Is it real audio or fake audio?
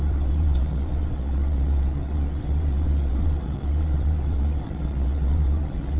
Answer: fake